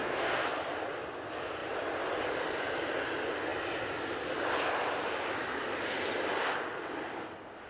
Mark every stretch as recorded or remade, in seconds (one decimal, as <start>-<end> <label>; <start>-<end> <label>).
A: 0.0-0.5 remade; 0.5-7.7 recorded